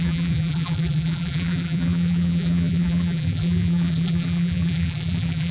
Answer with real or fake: fake